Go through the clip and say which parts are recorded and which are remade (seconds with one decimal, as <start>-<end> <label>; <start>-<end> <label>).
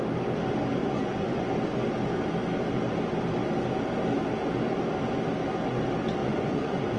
0.0-0.8 recorded; 0.8-1.5 remade; 1.5-6.2 recorded; 6.2-7.0 remade